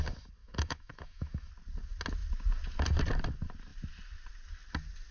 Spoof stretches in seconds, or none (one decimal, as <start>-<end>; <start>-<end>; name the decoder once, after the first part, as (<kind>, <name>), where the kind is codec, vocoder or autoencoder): 0.4-1.5 (autoencoder, DAC-VAE)